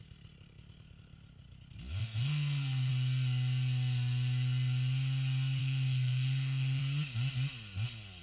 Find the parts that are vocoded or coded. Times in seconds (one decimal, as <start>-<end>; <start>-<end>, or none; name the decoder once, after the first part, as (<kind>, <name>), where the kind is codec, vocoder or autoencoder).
2.0-2.9 (codec, SNAC); 5.6-6.8